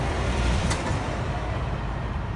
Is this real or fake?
fake